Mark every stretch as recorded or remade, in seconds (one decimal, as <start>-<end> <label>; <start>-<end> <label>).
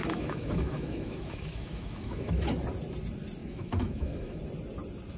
0.0-2.5 remade; 2.5-3.4 recorded; 3.4-4.4 remade; 4.4-5.2 recorded